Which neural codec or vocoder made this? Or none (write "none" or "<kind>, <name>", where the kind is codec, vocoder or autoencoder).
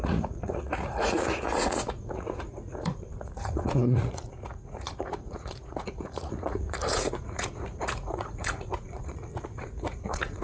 vocoder, Vocos